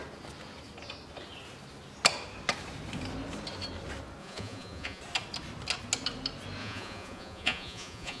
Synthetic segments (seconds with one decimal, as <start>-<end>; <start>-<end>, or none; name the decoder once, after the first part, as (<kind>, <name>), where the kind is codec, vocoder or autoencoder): 4.2-5.0 (vocoder, Vocos); 6.6-8.2

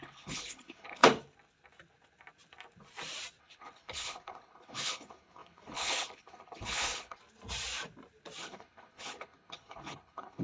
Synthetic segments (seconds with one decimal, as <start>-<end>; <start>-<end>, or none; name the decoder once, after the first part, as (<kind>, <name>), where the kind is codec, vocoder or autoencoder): 0.0-1.0 (codec, HILCodec); 3.4-7.2; 8.4-10.4

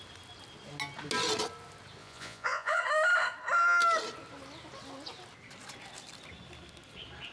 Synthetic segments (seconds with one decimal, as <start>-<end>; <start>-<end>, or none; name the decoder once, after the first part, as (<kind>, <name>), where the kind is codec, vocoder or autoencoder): 2.0-2.8 (vocoder, Vocos)

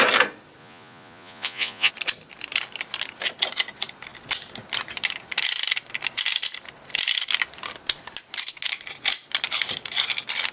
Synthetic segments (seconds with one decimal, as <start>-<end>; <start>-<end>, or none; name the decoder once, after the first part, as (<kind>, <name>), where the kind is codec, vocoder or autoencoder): 0.6-1.9 (vocoder, Vocos)

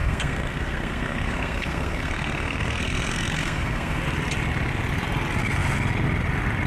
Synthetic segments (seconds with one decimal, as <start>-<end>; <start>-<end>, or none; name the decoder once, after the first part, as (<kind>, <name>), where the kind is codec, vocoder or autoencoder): 0.0-4.0 (codec, SNAC)